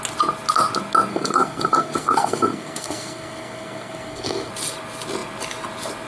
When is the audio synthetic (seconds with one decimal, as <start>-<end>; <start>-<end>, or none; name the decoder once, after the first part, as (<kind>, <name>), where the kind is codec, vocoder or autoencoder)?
1.1-4.5 (codec, SNAC)